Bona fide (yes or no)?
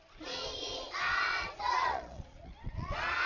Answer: no